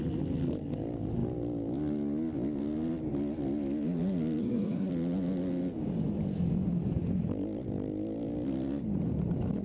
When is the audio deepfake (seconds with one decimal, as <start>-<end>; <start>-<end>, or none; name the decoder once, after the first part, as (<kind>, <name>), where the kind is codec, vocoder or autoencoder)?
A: 4.4-4.9 (codec, SNAC)